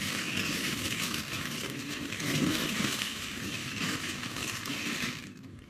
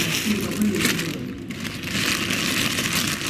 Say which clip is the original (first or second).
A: second